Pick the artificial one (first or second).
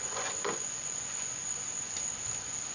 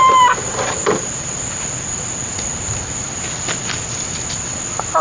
first